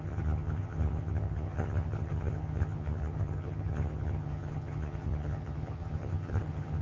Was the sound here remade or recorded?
remade